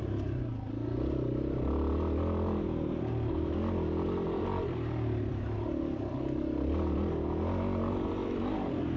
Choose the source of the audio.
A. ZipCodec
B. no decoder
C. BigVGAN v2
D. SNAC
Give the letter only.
B